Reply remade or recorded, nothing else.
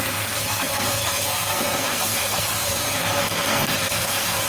remade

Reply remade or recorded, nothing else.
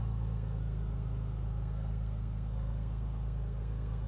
remade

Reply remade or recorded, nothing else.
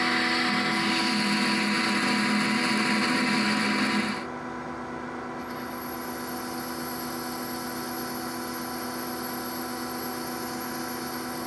recorded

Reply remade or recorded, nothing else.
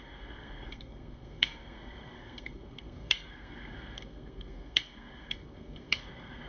remade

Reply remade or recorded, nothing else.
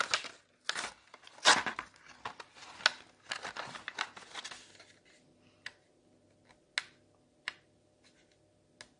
recorded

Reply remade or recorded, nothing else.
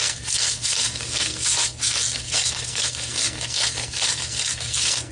remade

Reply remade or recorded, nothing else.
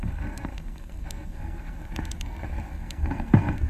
remade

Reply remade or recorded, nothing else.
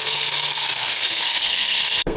remade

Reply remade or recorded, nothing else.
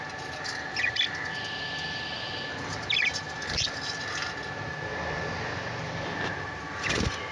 recorded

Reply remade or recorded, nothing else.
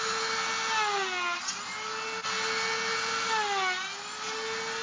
recorded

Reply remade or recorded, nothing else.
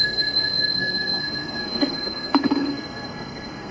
remade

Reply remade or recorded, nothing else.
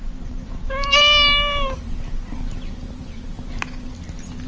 recorded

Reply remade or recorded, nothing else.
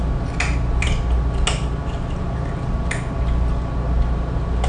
recorded